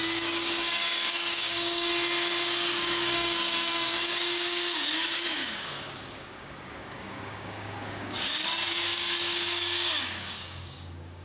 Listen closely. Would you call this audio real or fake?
fake